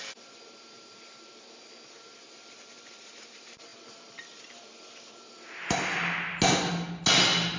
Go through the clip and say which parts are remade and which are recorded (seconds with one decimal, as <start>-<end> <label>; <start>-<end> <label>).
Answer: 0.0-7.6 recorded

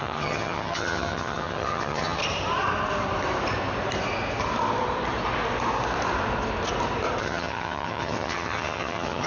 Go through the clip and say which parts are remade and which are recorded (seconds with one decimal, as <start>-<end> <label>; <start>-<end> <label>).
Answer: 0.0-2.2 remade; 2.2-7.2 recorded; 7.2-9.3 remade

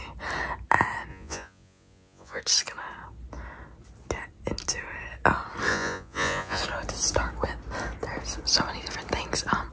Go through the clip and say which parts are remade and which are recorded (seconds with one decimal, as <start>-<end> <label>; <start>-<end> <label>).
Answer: 0.0-1.1 recorded; 1.1-2.4 remade; 2.4-5.7 recorded; 5.7-6.6 remade; 6.6-9.7 recorded

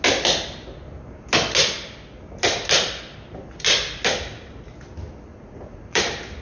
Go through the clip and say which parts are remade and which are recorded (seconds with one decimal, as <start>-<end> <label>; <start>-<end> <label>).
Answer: 0.0-5.3 recorded; 5.3-6.0 remade; 6.0-6.4 recorded